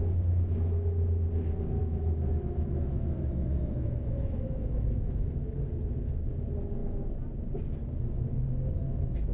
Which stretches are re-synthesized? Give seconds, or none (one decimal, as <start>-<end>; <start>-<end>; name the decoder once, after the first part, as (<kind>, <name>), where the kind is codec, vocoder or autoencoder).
1.8-5.6 (autoencoder, DAC-VAE)